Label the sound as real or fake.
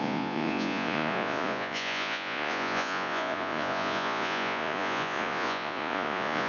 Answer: fake